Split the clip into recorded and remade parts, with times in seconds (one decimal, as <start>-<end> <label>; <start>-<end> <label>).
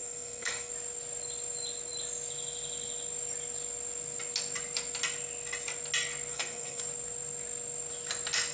0.0-0.7 remade; 0.7-6.3 recorded; 6.3-6.8 remade; 6.8-8.5 recorded